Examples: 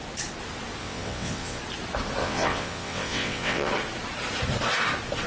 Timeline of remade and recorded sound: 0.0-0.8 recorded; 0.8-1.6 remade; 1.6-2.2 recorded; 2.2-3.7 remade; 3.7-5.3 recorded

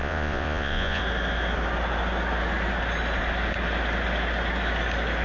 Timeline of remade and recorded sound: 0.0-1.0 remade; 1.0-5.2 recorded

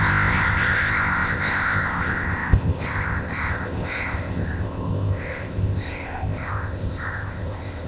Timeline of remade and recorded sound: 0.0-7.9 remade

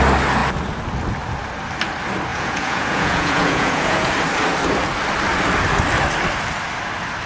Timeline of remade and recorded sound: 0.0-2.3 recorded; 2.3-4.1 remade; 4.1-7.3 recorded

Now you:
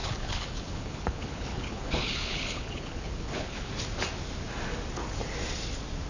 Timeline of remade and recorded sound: 0.0-3.7 remade; 3.7-6.1 recorded

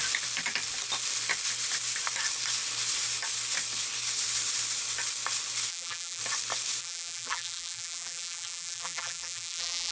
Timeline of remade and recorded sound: 0.0-5.7 recorded; 5.7-6.2 remade; 6.2-6.8 recorded; 6.8-9.9 remade

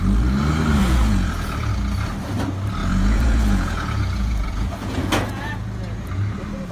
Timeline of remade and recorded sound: 0.0-0.8 recorded; 0.8-1.7 remade; 1.7-2.8 recorded; 2.8-6.1 remade; 6.1-6.7 recorded